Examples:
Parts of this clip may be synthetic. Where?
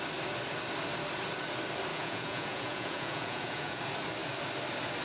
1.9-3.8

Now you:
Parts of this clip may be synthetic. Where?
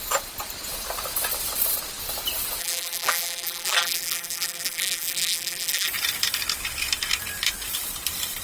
2.6-5.9